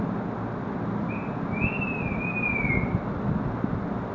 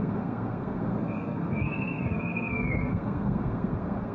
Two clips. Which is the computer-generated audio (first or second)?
second